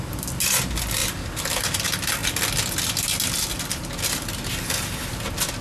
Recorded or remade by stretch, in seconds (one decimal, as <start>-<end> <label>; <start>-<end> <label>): 0.0-1.0 recorded; 1.0-1.6 remade; 1.6-5.6 recorded